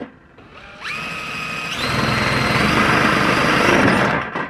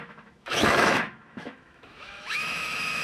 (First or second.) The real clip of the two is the first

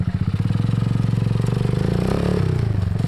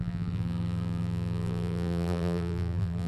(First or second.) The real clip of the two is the first